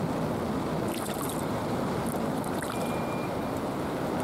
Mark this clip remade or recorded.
recorded